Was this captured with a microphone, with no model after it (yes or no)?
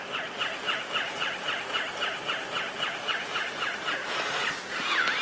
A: yes